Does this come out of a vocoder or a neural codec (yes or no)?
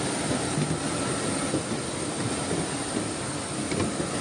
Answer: no